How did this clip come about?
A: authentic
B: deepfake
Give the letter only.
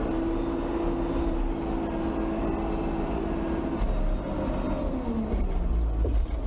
A